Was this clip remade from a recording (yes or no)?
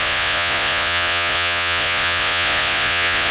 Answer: yes